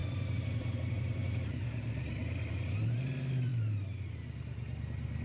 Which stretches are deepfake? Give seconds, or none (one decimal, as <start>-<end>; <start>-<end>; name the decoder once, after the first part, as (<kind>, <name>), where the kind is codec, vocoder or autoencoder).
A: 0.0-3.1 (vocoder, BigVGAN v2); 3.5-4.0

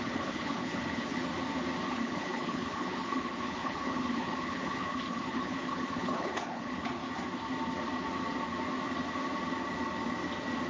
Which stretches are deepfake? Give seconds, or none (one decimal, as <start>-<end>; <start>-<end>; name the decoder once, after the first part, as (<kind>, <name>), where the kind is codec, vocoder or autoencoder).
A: 0.0-1.3 (codec, HILCodec); 1.9-7.0

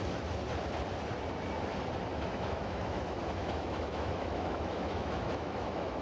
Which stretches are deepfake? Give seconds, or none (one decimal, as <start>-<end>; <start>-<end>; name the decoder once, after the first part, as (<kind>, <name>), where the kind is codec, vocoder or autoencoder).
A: 2.1-6.0 (autoencoder, DAC-VAE)

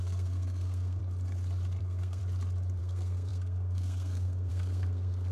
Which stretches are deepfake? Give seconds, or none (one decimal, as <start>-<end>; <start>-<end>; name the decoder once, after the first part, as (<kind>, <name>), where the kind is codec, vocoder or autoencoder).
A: 0.0-1.0 (codec, SNAC); 1.8-2.2; 2.8-5.3

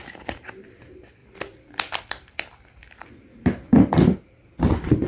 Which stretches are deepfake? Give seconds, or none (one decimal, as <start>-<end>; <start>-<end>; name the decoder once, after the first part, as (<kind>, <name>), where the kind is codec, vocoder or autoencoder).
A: 0.0-5.1 (vocoder, BigVGAN v2)

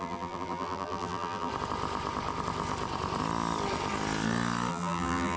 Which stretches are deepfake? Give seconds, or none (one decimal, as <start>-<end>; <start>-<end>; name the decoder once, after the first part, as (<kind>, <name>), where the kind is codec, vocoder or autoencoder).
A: 0.0-1.5 (vocoder, BigVGAN v2); 4.7-5.4